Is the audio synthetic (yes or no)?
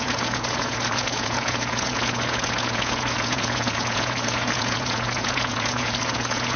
yes